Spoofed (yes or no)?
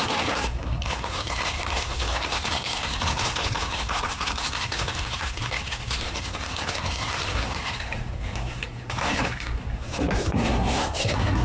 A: yes